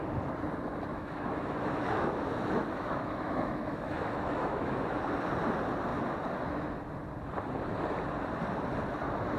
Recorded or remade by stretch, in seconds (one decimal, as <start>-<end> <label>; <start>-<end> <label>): 0.0-0.9 recorded; 0.9-5.0 remade; 5.0-9.4 recorded

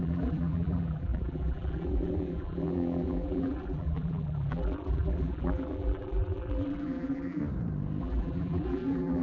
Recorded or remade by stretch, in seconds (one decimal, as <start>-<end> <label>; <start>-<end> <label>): 0.0-7.4 remade; 7.4-8.0 recorded; 8.0-9.2 remade

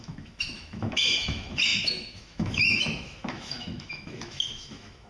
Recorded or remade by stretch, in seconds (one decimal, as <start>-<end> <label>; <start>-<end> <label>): 0.0-5.1 remade